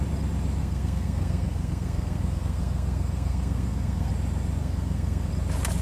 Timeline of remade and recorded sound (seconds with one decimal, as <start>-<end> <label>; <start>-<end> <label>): 0.0-0.6 recorded; 0.6-4.1 remade; 4.1-4.6 recorded; 4.6-5.3 remade; 5.3-5.8 recorded